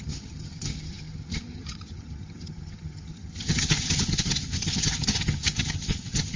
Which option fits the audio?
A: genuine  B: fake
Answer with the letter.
B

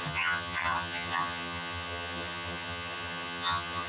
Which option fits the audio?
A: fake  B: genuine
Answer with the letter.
A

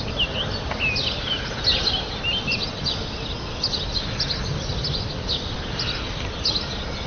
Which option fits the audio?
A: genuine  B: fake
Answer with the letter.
A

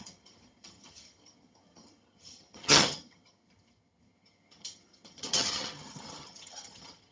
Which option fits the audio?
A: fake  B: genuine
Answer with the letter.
A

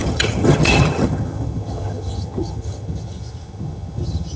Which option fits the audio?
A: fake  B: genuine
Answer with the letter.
A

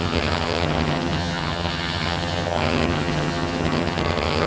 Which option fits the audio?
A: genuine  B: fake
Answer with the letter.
B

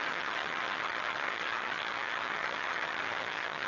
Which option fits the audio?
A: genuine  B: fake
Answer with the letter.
B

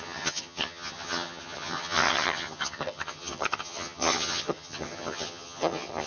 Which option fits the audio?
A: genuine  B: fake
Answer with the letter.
B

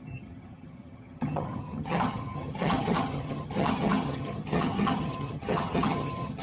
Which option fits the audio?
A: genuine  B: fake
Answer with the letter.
B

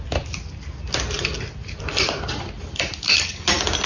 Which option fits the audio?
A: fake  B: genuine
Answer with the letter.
B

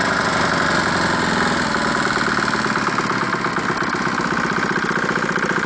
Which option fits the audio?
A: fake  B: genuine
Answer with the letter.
B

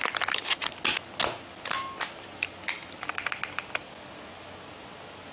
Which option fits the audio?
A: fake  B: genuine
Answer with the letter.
B